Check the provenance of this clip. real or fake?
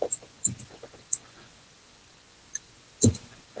fake